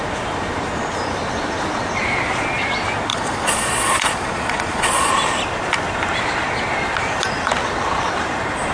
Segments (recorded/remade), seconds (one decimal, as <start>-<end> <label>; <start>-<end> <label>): 0.0-3.1 recorded; 3.1-5.1 remade; 5.1-8.7 recorded